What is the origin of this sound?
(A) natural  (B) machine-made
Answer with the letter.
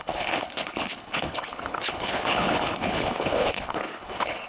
B